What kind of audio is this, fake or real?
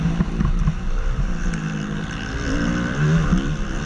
real